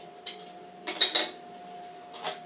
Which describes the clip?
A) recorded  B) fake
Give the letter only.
A